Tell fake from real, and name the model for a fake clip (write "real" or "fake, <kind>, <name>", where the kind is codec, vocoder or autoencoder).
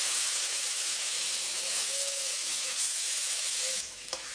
fake, autoencoder, DAC-VAE